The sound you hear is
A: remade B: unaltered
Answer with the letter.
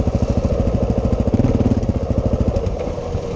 B